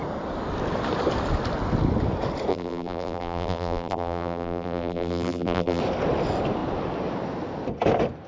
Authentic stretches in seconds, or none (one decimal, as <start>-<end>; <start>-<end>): 0.0-2.5; 5.8-8.3